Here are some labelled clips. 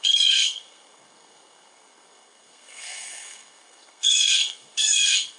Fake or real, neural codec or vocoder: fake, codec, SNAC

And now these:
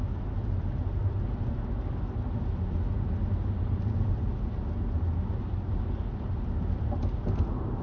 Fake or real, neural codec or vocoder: real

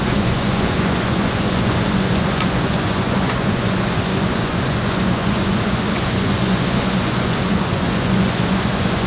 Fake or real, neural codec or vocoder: fake, vocoder, Vocos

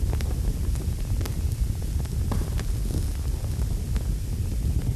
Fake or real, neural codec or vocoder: real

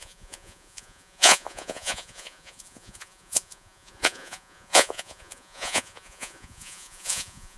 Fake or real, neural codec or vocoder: fake, vocoder, Vocos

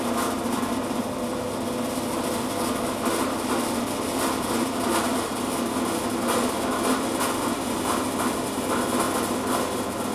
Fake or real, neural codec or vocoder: real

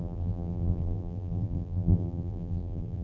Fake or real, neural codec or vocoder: fake, vocoder, BigVGAN v2